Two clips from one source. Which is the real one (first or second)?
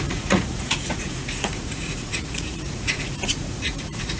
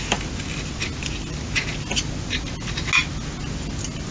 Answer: second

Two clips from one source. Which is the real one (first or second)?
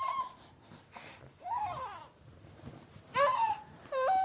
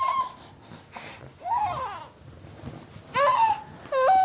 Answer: second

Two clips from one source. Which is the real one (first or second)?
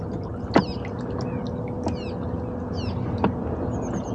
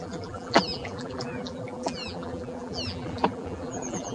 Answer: first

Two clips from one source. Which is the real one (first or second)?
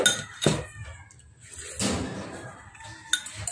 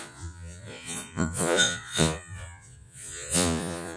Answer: first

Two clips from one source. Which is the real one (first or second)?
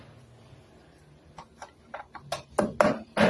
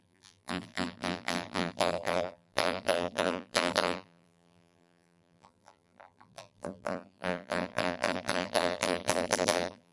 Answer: first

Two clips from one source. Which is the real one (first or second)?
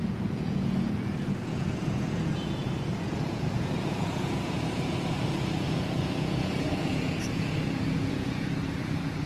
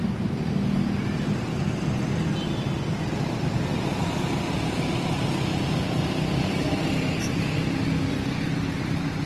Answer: second